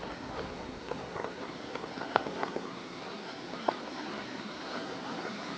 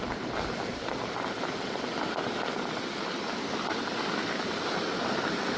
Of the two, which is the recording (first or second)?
second